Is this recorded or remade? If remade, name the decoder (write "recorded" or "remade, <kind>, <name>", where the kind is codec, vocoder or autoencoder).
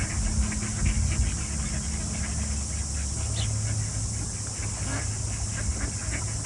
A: recorded